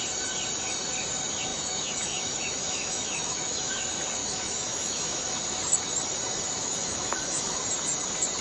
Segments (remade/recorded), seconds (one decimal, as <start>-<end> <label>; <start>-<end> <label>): 0.0-1.5 recorded; 1.5-3.7 remade; 3.7-4.2 recorded; 4.2-5.2 remade; 5.2-6.6 recorded; 6.6-7.6 remade; 7.6-8.4 recorded